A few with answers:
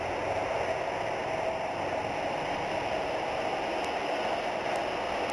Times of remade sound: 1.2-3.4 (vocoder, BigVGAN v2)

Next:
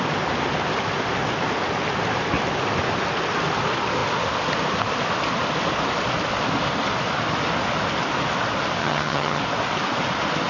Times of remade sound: 8.8-9.4 (vocoder, HiFi-GAN)

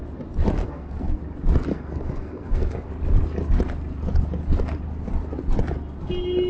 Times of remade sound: 0.6-1.2 (codec, SNAC); 1.7-2.9

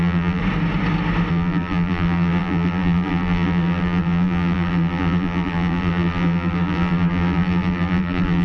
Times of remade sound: 0.0-0.4 (vocoder, BigVGAN v2); 1.3-8.4